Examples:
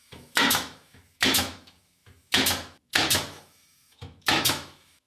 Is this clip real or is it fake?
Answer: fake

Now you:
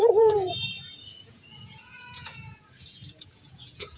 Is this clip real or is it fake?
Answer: fake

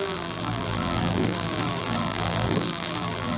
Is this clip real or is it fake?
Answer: fake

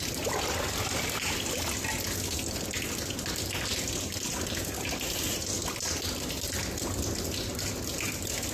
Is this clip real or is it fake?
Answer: real